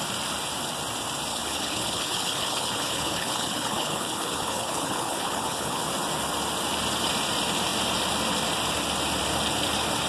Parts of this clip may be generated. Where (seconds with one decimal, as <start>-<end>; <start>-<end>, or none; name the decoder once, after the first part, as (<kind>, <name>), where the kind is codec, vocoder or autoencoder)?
1.3-5.8 (codec, HILCodec)